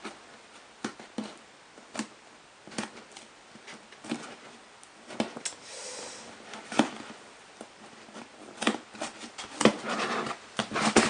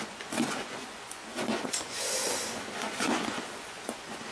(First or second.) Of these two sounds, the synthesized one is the second